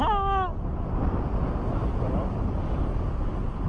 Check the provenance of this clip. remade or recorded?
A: recorded